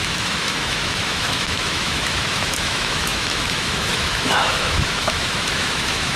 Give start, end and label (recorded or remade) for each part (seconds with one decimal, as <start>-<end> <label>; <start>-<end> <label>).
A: 0.0-6.2 remade